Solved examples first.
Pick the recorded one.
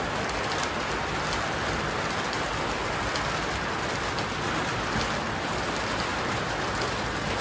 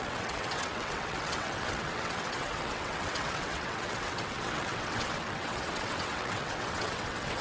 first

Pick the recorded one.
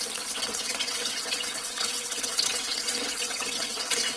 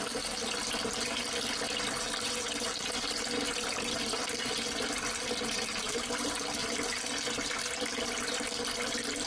second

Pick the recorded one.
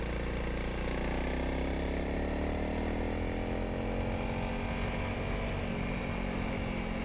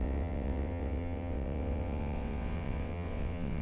first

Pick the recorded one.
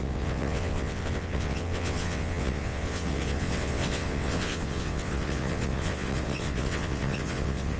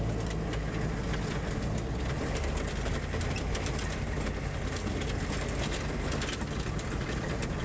second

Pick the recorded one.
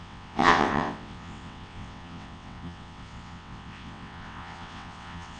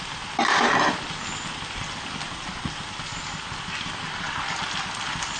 second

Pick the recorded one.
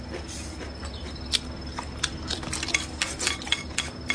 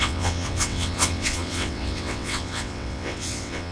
first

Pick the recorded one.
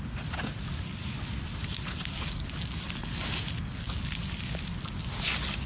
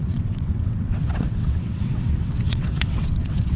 first